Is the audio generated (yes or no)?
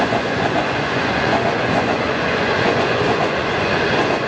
yes